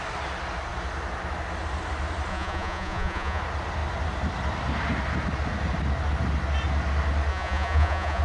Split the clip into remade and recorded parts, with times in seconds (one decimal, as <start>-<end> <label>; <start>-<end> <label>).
0.0-2.3 recorded; 2.3-3.4 remade; 3.4-7.3 recorded; 7.3-8.2 remade